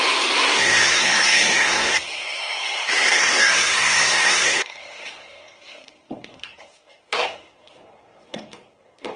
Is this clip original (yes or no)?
no